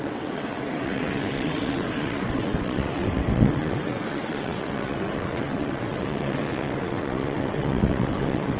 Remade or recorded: remade